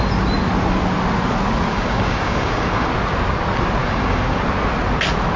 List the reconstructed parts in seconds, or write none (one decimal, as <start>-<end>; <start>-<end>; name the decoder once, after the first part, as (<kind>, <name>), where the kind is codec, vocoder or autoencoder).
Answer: 1.7-2.9 (codec, DAC); 3.8-4.4